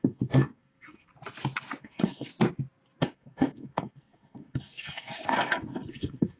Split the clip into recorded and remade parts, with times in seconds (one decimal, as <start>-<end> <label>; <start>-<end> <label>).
0.0-1.1 remade; 1.1-1.8 recorded; 1.8-2.3 remade; 2.3-3.0 recorded; 3.0-6.4 remade